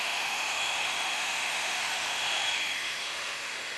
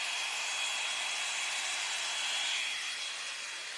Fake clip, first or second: first